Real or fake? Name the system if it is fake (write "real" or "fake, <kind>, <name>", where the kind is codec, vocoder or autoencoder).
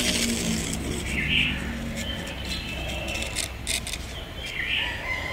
real